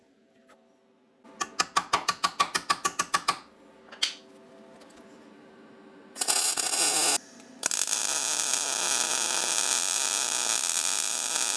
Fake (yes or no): no